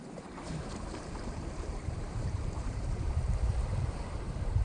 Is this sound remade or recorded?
remade